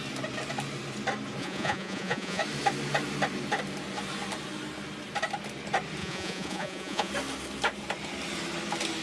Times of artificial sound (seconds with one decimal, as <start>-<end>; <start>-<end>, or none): 1.4-2.4; 6.0-7.1